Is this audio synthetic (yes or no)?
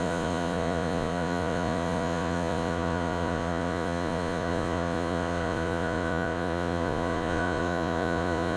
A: yes